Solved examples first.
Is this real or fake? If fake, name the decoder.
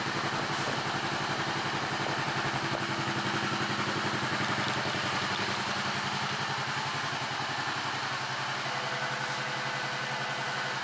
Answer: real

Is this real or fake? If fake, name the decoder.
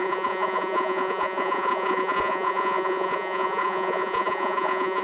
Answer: fake, vocoder, Vocos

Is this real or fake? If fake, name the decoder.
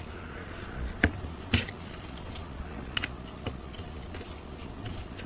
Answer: fake, vocoder, Vocos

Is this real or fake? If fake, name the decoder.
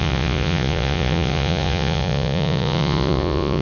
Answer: fake, vocoder, Vocos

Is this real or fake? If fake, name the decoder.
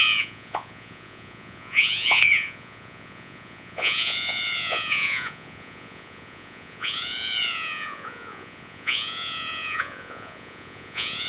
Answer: fake, vocoder, Vocos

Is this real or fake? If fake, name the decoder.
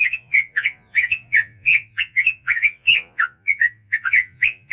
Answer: fake, vocoder, Vocos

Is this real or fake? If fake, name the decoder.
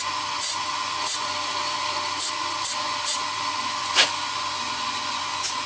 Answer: fake, vocoder, Vocos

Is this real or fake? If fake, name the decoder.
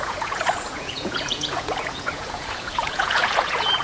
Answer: fake, vocoder, Vocos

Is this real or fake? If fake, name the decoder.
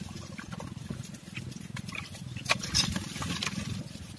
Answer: real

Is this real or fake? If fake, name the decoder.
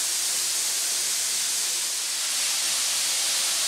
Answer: real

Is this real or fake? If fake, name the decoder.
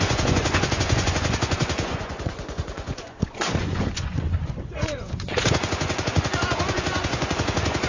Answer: fake, vocoder, Vocos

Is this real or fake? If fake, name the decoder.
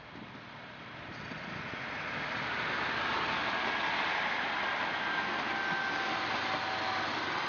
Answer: real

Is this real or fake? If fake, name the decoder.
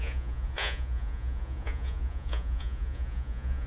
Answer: fake, vocoder, Vocos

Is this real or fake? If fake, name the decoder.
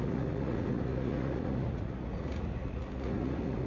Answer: fake, vocoder, Vocos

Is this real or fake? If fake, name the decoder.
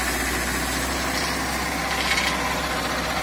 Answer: real